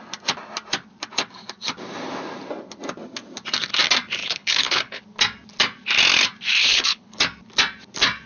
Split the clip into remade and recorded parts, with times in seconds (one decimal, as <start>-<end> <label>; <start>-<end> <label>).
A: 0.0-4.2 recorded; 4.2-5.0 remade; 5.0-6.6 recorded; 6.6-7.2 remade; 7.2-8.3 recorded